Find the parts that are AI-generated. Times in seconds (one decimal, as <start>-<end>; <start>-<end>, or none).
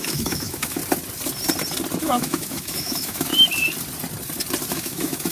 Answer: 0.0-0.8; 2.0-3.3; 4.7-5.3